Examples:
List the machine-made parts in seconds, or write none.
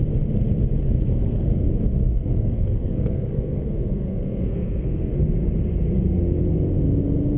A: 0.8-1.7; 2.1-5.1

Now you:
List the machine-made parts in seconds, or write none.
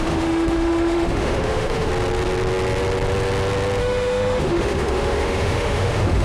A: 0.0-1.9; 3.8-6.2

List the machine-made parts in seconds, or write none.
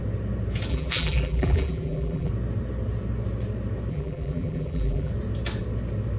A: 0.7-2.3; 3.9-5.1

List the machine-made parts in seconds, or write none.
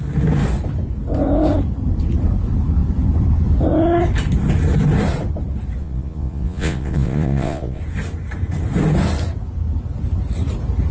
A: 5.8-7.8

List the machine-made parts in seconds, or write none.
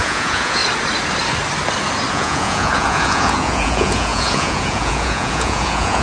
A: 0.0-0.6; 2.1-6.0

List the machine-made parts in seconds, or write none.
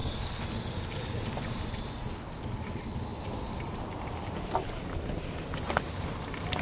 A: none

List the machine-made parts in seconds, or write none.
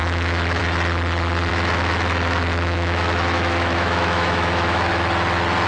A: 0.0-0.6; 1.5-4.9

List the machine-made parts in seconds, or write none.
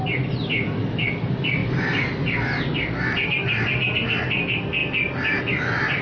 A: none